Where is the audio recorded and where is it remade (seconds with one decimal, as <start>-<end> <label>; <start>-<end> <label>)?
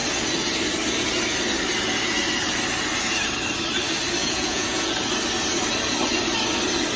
0.0-4.2 recorded; 4.2-4.9 remade; 4.9-7.0 recorded